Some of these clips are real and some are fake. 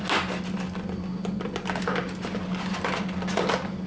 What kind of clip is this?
real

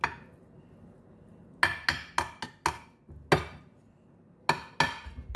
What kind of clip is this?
real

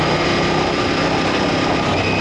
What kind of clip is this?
real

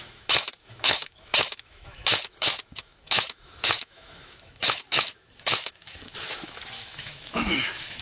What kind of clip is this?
fake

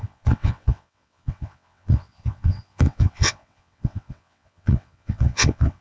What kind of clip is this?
fake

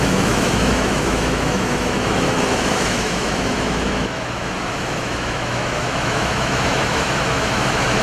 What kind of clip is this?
fake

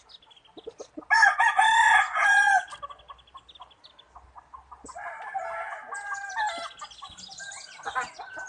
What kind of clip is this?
real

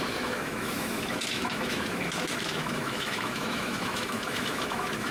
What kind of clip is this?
fake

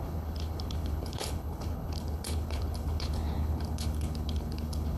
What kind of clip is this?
fake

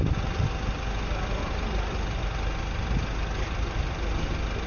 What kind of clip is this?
real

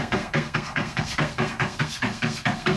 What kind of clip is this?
fake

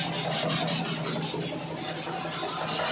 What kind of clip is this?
real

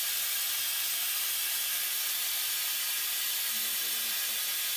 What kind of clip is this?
real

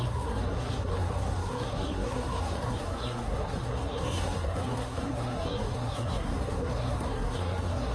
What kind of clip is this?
fake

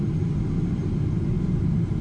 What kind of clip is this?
real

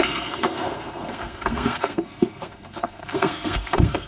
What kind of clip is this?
fake